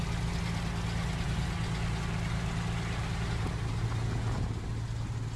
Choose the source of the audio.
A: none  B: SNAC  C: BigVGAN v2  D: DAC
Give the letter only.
A